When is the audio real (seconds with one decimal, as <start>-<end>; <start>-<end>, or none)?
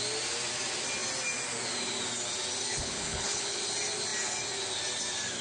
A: 0.0-2.7; 3.6-5.4